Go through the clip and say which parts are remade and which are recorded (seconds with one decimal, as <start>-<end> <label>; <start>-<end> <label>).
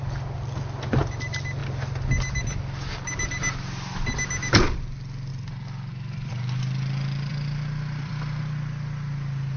0.0-5.3 recorded; 5.3-6.3 remade; 6.3-7.3 recorded; 7.3-8.4 remade; 8.4-9.6 recorded